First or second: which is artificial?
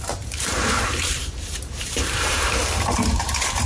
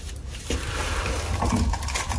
first